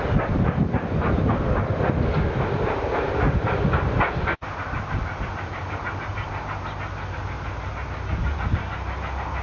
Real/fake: real